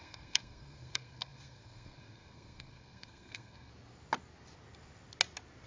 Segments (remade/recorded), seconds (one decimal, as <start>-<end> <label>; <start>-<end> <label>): 0.0-3.7 remade; 3.7-5.7 recorded